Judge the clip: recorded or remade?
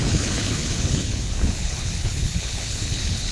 remade